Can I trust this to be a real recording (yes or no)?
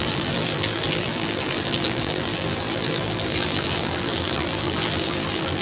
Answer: no